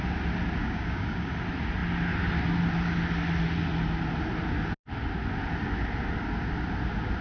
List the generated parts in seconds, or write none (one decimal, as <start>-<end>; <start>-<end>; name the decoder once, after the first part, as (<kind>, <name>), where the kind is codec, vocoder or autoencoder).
0.6-1.3 (codec, DAC)